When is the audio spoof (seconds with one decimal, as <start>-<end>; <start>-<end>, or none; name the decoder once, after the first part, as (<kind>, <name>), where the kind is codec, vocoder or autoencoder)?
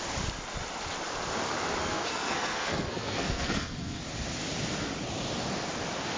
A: 1.8-4.0 (codec, SNAC)